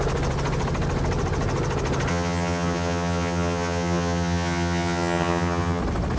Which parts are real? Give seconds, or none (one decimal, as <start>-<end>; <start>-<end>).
0.0-2.1; 5.8-6.2